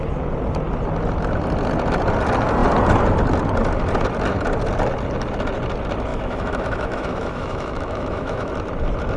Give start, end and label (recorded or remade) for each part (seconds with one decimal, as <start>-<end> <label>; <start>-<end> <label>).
0.0-6.1 recorded; 6.1-8.5 remade; 8.5-9.2 recorded